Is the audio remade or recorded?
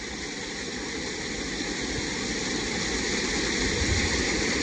recorded